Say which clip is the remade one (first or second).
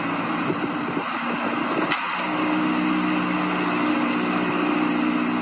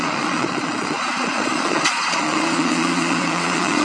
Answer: second